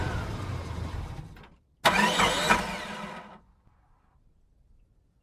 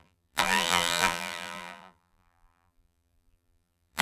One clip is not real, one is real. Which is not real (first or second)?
second